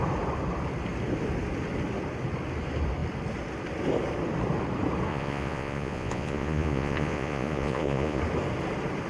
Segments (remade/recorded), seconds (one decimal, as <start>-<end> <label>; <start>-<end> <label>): 0.0-5.1 recorded; 5.1-8.2 remade; 8.2-9.1 recorded